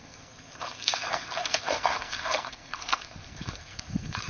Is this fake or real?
fake